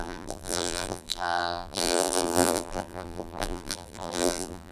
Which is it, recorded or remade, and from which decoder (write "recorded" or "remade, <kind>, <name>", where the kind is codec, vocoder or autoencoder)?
remade, vocoder, BigVGAN v2